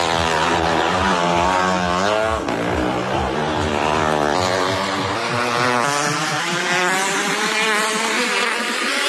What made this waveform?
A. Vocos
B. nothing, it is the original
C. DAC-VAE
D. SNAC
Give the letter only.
B